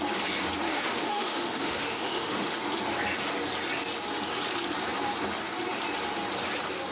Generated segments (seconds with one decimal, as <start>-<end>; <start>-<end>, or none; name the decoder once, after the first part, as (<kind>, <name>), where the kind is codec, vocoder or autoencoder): 0.7-2.5 (autoencoder, DAC-VAE)